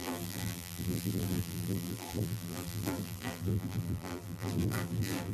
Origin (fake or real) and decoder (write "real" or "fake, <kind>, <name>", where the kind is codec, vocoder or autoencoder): fake, vocoder, BigVGAN v2